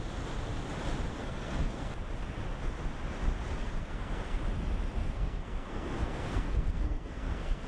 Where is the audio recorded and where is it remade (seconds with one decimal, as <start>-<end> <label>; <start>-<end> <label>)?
0.0-1.1 recorded; 1.1-1.9 remade; 1.9-3.6 recorded; 3.6-4.4 remade; 4.4-5.0 recorded; 5.0-7.7 remade